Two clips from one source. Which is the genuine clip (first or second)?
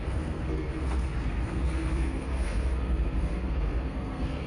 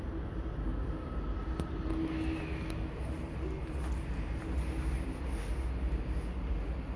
second